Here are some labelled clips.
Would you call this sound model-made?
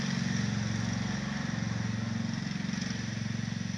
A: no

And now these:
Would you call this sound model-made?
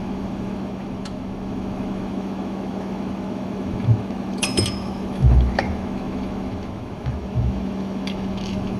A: yes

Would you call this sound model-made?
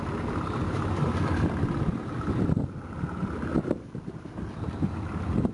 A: yes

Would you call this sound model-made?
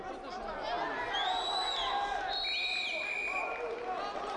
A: no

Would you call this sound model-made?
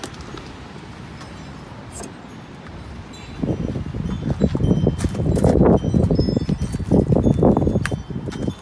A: no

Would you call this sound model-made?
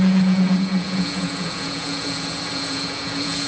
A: yes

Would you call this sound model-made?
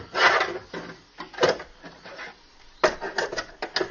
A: no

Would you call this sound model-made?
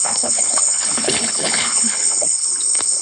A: yes